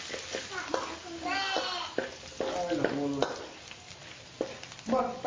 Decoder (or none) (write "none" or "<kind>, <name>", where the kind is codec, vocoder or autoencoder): none